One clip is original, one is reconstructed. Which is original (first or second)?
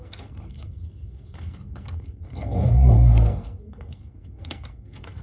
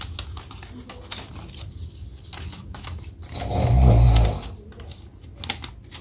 second